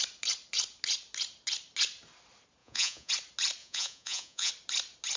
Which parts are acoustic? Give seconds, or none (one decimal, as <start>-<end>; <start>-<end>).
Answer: 0.0-2.6; 3.1-3.6; 4.5-5.2